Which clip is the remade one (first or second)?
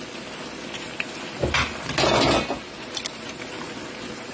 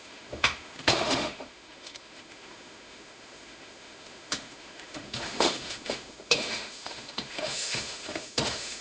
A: second